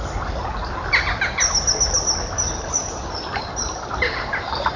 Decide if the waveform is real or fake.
real